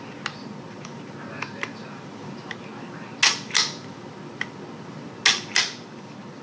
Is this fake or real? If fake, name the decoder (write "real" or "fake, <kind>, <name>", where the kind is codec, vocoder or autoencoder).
real